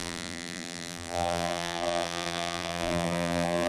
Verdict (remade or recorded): remade